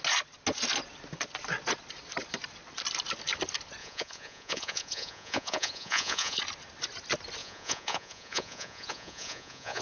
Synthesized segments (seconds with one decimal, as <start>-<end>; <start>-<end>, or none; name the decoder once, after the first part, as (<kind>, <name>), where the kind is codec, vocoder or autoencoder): 3.8-6.4 (vocoder, Vocos); 7.4-9.8